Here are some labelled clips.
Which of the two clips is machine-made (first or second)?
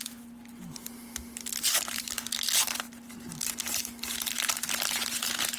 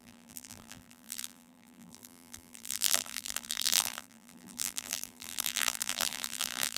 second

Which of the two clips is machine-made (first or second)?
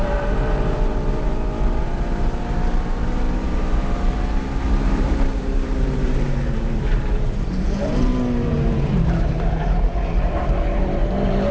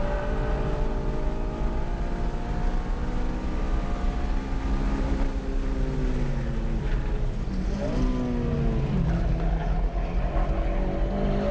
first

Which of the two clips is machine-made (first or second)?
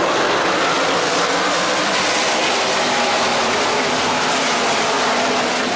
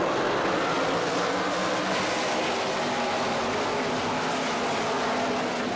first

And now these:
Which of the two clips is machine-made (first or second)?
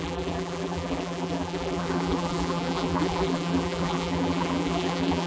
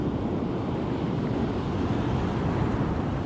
first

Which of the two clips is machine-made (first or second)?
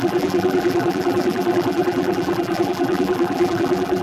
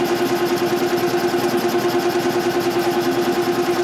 first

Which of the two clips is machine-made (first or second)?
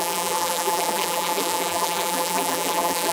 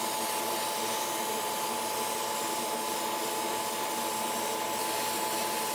first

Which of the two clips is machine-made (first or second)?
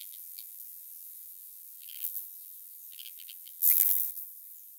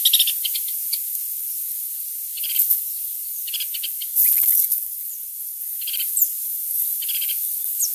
first